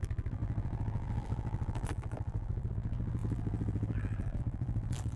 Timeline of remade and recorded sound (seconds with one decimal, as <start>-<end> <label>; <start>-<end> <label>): 0.0-5.2 remade